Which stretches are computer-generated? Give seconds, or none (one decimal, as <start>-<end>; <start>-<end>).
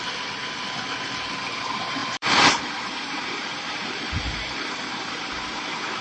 2.0-4.7